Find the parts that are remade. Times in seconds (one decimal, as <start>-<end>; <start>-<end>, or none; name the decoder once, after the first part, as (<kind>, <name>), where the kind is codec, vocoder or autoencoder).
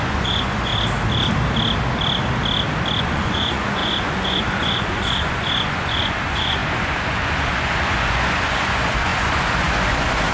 0.0-0.7 (vocoder, Vocos); 3.0-10.3